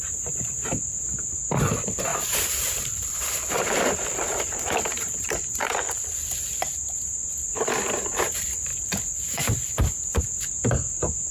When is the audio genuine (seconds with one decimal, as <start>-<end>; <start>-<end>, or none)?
0.0-2.1; 6.5-8.7; 10.2-11.3